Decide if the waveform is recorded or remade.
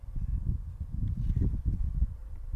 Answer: recorded